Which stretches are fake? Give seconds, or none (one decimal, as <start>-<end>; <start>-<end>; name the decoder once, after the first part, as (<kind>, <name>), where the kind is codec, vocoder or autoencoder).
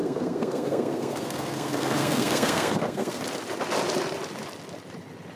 0.0-3.2 (codec, SNAC)